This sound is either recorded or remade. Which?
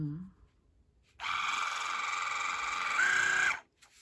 recorded